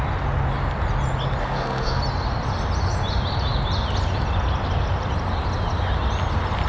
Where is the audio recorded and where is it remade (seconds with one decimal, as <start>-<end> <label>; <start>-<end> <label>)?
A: 0.0-1.4 recorded; 1.4-2.0 remade; 2.0-6.7 recorded